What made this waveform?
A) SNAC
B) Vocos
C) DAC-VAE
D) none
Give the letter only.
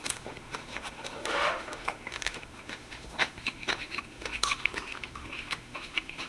C